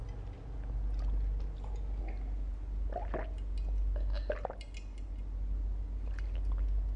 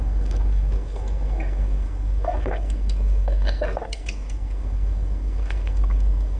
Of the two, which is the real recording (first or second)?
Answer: first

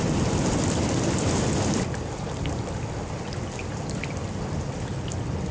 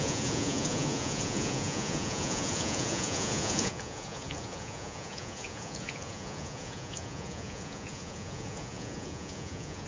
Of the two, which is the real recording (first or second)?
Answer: first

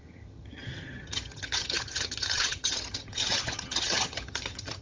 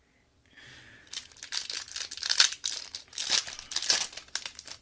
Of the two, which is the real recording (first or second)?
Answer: second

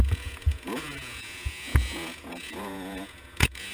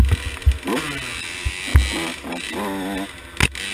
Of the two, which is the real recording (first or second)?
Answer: second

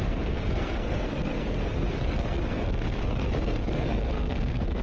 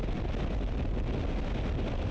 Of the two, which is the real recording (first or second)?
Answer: second